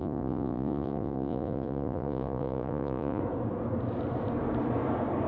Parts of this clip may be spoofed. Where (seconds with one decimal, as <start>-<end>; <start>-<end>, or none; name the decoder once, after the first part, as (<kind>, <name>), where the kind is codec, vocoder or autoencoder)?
0.0-3.2 (vocoder, Vocos)